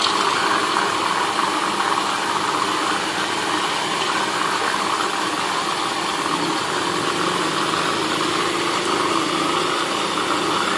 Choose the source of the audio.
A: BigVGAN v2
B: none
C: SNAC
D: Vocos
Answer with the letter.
B